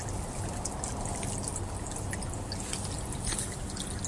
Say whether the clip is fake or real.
real